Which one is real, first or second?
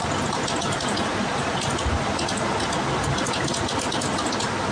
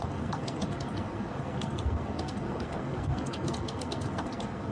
first